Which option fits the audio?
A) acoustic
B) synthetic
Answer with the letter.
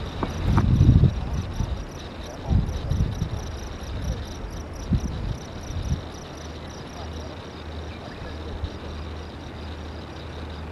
A